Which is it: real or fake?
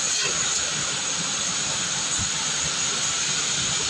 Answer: fake